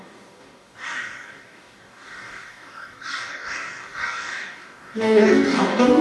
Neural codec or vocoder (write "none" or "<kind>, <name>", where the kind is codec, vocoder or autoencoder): codec, DAC